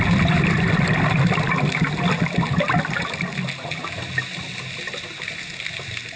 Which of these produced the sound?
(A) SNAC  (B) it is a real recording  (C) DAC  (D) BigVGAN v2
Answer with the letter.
B